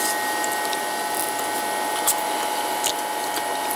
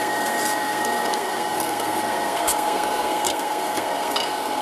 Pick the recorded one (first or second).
first